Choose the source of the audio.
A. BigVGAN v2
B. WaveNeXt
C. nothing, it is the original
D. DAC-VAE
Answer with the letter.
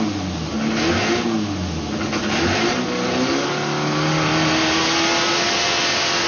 C